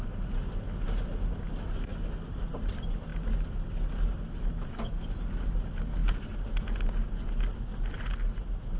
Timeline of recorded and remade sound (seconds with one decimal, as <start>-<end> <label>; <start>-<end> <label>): 0.0-8.8 recorded